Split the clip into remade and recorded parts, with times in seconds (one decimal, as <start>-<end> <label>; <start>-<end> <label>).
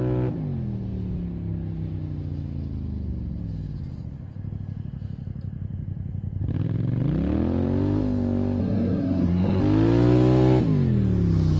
0.0-8.6 recorded; 8.6-9.6 remade; 9.6-11.6 recorded